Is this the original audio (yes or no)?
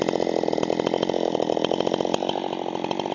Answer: yes